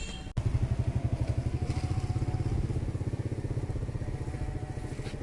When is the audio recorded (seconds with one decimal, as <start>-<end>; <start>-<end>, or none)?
0.0-5.2